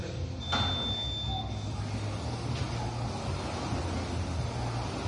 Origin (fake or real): real